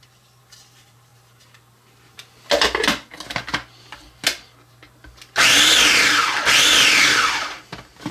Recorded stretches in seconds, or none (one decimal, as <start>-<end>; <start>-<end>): 1.1-6.0